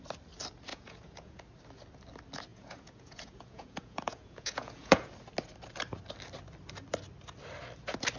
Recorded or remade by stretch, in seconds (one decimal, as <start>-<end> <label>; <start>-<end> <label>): 0.0-0.7 recorded; 0.7-1.4 remade; 1.4-2.5 recorded; 2.5-5.1 remade; 5.1-8.2 recorded